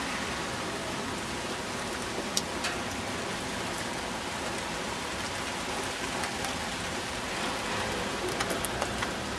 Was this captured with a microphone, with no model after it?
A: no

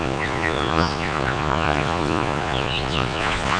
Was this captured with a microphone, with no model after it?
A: no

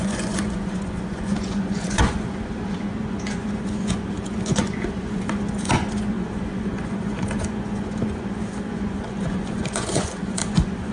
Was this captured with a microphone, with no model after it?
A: no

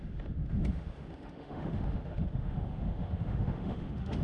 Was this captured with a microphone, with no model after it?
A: no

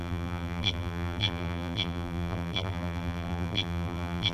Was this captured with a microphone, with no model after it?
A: no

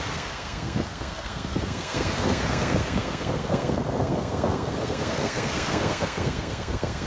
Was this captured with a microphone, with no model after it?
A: no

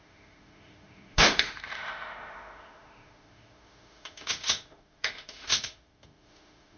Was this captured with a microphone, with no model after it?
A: no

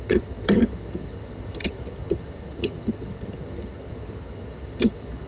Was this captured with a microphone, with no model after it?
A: no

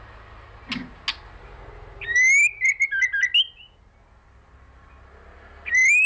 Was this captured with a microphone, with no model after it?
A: yes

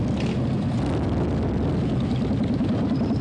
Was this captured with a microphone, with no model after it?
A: yes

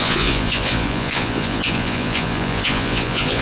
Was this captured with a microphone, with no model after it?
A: no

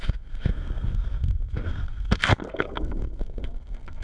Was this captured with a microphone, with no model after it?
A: no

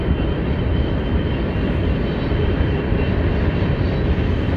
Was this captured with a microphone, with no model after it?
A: no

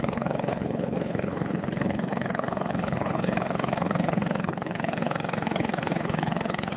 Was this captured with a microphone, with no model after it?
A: no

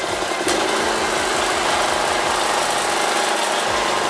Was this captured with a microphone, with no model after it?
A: yes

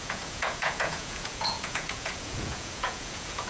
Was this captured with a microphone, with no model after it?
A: no